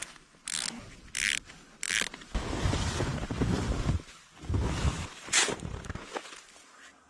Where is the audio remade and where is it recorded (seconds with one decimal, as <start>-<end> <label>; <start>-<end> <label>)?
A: 0.0-7.1 recorded